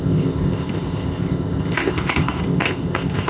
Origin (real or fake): fake